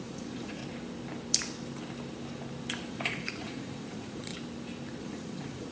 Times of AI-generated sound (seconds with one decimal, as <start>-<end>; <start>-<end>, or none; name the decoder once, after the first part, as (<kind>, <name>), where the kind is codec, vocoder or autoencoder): 0.0-0.6 (vocoder, Vocos); 2.9-4.3; 5.0-5.7